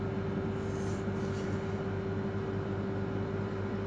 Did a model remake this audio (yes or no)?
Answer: no